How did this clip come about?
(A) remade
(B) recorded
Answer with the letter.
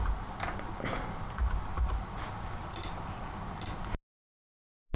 B